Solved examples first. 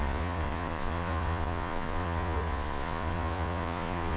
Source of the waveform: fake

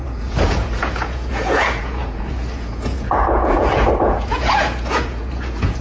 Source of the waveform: fake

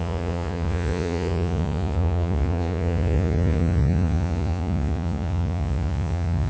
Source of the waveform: fake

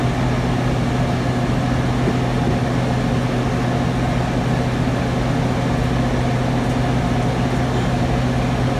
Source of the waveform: real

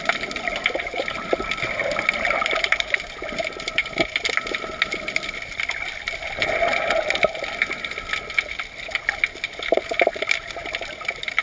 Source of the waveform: real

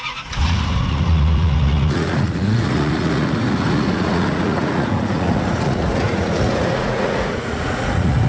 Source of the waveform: fake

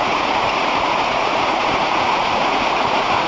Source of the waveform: fake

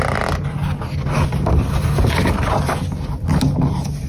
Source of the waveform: real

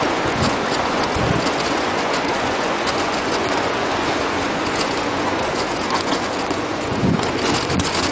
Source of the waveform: fake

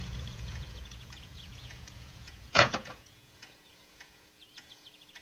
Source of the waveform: fake